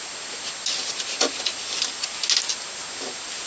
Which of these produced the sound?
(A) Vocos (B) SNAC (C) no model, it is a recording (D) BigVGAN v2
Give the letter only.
C